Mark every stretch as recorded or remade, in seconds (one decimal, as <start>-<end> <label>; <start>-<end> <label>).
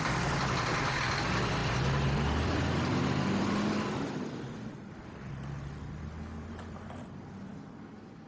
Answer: 0.0-8.3 recorded